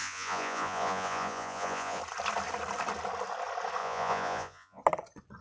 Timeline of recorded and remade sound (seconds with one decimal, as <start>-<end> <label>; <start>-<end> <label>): 0.0-2.0 remade; 2.0-3.8 recorded; 3.8-4.8 remade; 4.8-5.4 recorded